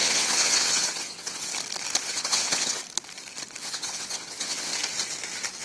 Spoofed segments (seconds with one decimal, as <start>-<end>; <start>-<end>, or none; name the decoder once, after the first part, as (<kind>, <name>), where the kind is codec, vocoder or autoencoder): 0.0-1.5 (vocoder, WaveNeXt); 2.0-2.8; 3.6-4.7